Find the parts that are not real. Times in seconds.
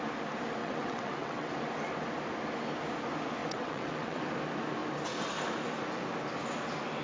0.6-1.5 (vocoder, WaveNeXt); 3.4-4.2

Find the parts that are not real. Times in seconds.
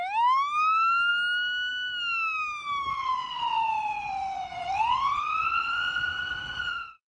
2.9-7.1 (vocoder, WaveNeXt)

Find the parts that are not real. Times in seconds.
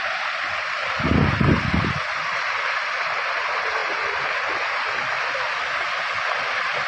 none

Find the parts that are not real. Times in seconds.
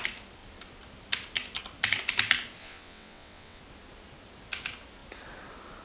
2.6-3.6 (vocoder, WaveNeXt)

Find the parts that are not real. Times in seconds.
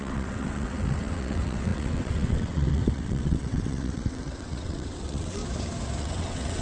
0.0-5.4 (vocoder, WaveNeXt); 6.0-6.6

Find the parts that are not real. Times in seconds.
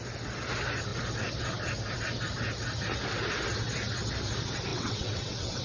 4.7-5.6 (vocoder, WaveNeXt)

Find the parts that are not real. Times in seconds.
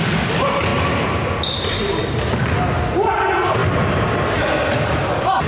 none